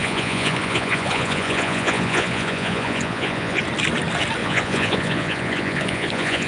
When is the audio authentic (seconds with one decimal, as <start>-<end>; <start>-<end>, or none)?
3.6-4.4